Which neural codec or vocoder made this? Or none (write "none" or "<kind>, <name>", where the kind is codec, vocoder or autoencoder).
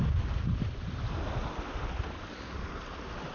none